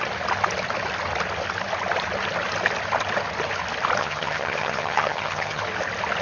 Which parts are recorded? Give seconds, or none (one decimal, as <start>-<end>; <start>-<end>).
0.0-4.0; 5.6-6.2